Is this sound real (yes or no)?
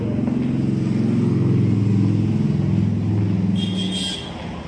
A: yes